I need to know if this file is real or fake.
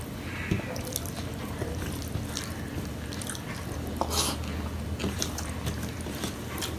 real